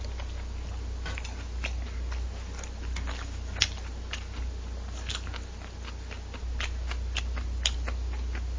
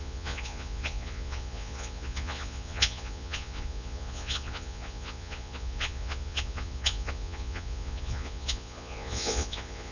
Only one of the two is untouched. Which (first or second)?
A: first